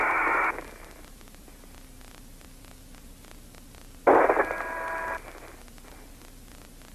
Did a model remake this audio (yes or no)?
no